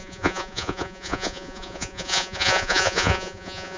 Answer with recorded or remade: remade